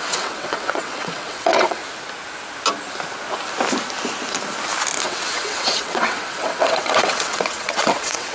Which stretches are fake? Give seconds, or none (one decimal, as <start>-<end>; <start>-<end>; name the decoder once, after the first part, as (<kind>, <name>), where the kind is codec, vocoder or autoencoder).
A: 0.0-1.8 (vocoder, WaveNeXt); 5.0-8.3